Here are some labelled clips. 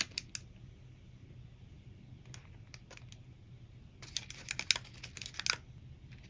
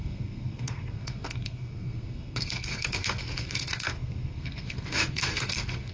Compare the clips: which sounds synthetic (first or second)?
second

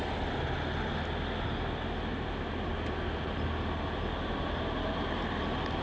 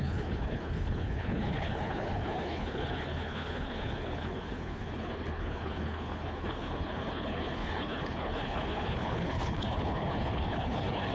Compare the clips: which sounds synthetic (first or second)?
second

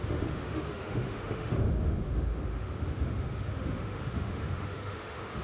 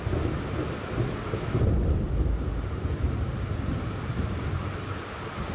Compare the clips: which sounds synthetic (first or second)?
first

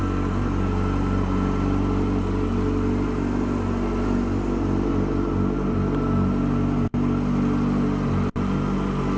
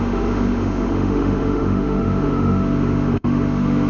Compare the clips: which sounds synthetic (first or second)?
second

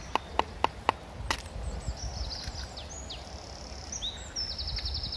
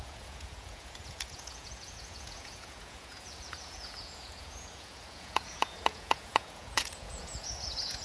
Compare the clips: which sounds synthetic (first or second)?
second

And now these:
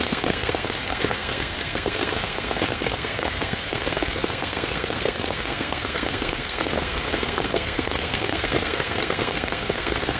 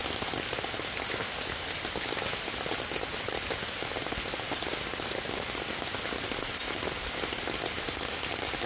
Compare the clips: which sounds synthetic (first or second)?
first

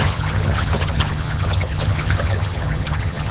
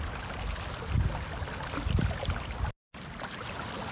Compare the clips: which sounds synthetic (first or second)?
first